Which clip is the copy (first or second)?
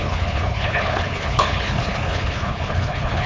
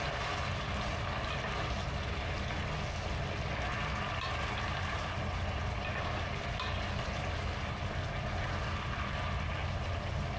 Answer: first